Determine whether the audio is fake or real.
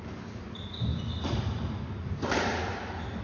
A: real